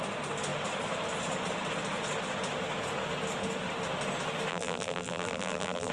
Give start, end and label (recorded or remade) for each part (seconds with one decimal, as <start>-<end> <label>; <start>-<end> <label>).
0.0-4.5 recorded; 4.5-5.9 remade